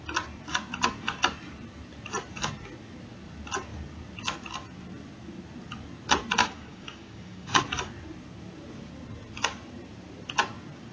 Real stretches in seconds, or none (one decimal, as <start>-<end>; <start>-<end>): 0.0-6.4; 7.6-10.9